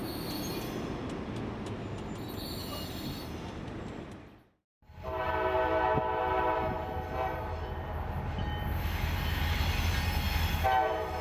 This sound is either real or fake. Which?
real